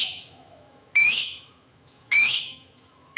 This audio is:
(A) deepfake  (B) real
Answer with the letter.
A